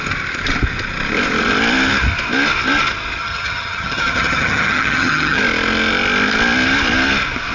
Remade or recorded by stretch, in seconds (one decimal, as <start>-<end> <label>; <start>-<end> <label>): 0.0-3.2 recorded; 3.2-5.4 remade; 5.4-7.5 recorded